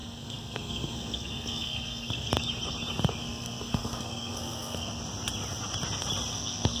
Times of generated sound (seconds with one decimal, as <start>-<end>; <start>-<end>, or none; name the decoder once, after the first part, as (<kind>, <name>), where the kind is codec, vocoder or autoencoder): 0.0-2.3 (codec, SNAC); 3.2-5.0; 6.3-6.8